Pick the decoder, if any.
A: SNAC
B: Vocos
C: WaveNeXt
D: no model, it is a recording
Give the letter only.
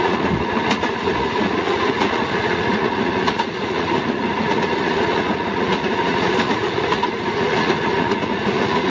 B